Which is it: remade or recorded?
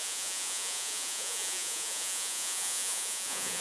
remade